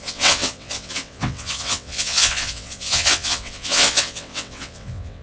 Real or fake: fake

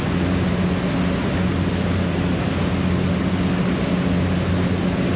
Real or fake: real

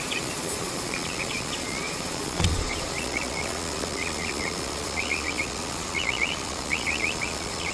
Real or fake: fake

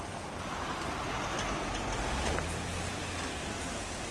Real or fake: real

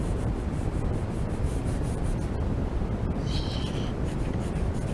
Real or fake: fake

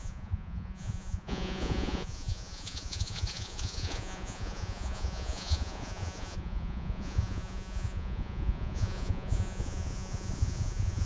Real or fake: fake